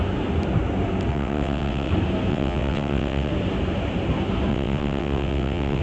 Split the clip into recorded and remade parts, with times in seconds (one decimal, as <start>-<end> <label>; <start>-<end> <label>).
0.0-1.1 recorded; 1.1-1.9 remade; 1.9-2.3 recorded; 2.3-3.3 remade; 3.3-4.5 recorded; 4.5-5.8 remade